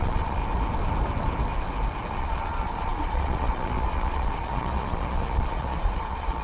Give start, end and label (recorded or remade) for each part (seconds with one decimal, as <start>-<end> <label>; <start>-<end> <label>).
0.0-0.4 remade; 0.4-2.1 recorded; 2.1-6.4 remade